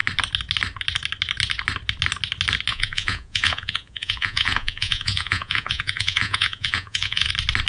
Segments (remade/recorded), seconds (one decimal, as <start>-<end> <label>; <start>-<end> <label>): 0.0-2.7 recorded; 2.7-7.3 remade; 7.3-7.7 recorded